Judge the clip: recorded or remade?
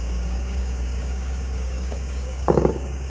remade